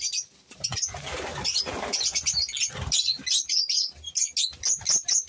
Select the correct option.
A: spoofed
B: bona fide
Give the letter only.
B